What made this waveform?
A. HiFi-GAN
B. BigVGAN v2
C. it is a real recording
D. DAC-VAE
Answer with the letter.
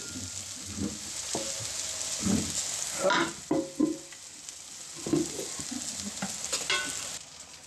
C